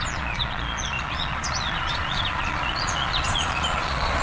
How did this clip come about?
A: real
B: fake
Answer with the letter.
B